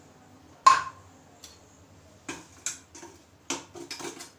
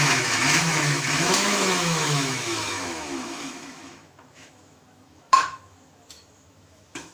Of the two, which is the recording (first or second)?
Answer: first